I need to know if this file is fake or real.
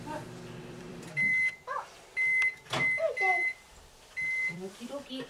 fake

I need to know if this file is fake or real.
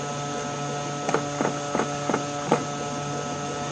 real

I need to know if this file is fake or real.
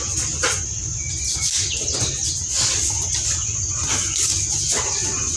real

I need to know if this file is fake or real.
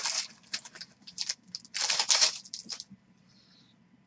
fake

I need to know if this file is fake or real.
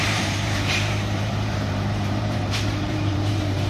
fake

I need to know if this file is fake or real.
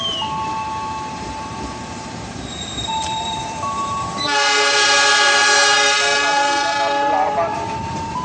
fake